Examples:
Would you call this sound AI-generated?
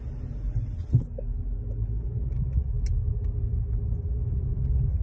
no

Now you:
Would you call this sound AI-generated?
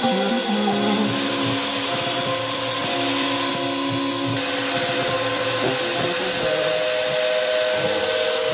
no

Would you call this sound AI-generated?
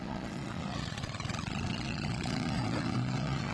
yes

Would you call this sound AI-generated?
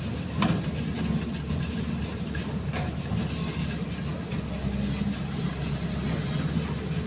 no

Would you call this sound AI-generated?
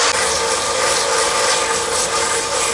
no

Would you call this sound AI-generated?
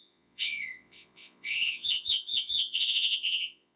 yes